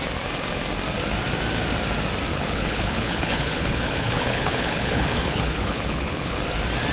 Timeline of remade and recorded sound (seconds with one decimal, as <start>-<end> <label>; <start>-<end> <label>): 0.0-2.3 recorded; 2.3-6.4 remade; 6.4-6.9 recorded